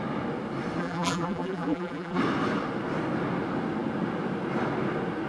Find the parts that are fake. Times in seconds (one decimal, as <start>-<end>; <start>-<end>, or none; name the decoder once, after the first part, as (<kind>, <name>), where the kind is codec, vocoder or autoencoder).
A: 0.8-2.2 (vocoder, BigVGAN v2)